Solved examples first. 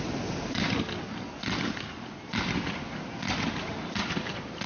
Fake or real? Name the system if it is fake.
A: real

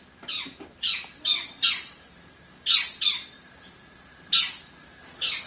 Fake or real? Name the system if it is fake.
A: real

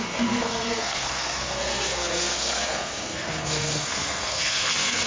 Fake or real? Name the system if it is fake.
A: fake, codec, SNAC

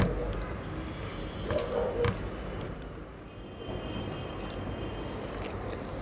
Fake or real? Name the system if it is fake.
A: real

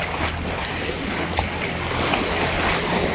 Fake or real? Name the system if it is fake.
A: real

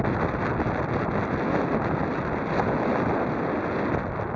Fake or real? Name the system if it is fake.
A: real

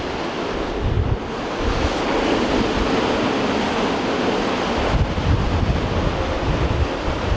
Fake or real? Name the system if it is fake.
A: real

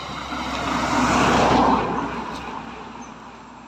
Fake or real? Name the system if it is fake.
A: real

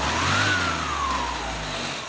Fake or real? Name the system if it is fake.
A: real